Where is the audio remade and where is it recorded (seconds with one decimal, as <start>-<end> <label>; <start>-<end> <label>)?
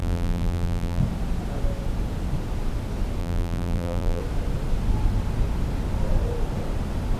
0.0-1.0 remade; 1.0-3.2 recorded; 3.2-4.2 remade; 4.2-7.2 recorded